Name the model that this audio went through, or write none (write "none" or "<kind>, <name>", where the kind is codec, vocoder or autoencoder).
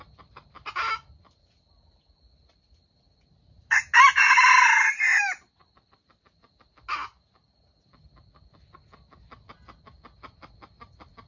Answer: none